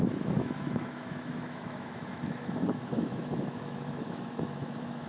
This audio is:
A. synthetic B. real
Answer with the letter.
A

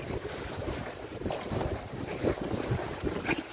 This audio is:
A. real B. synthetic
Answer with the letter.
B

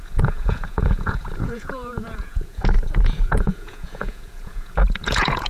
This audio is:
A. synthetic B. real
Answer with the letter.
A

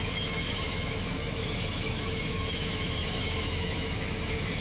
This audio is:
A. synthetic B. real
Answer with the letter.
A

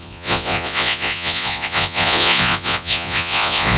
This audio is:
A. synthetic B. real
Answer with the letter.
A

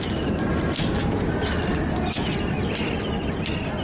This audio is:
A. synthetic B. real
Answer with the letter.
B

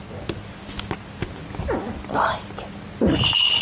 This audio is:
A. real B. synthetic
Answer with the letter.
A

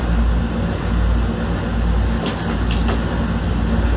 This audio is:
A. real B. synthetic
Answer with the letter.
A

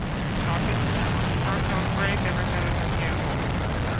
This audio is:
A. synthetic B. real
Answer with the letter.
B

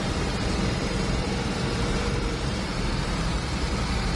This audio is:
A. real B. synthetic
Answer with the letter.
B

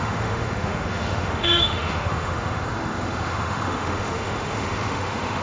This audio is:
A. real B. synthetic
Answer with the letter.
B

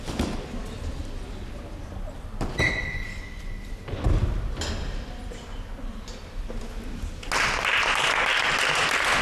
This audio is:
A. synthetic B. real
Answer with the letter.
B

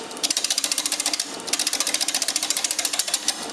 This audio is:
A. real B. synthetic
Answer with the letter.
B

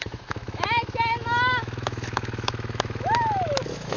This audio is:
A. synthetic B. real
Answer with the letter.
A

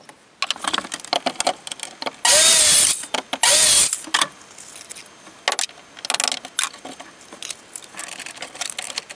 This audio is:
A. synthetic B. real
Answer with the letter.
B